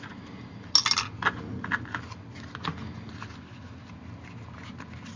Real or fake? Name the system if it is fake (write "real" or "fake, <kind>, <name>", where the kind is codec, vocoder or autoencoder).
real